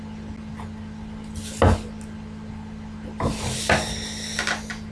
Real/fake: real